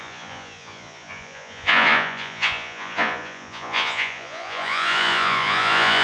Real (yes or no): no